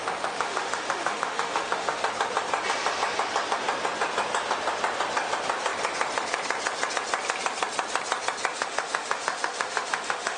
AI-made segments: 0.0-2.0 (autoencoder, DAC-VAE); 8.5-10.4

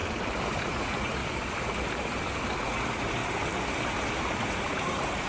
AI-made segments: 0.6-1.2 (vocoder, Vocos); 2.6-3.2; 4.4-5.3

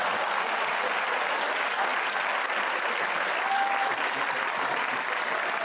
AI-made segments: none

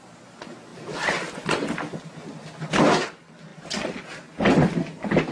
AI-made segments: none

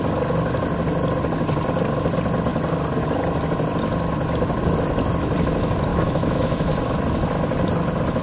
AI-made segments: 5.9-6.7 (autoencoder, DAC-VAE)

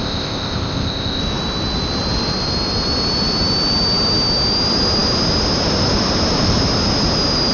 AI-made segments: 0.0-1.2 (codec, ZipCodec)

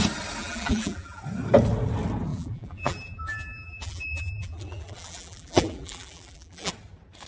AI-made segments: 0.4-1.2 (vocoder, BigVGAN v2); 2.3-6.7